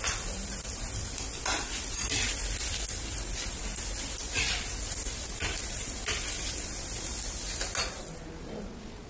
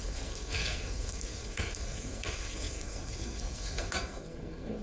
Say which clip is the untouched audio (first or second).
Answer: first